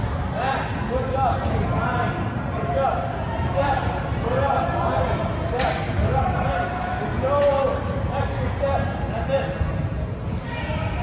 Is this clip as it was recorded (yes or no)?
yes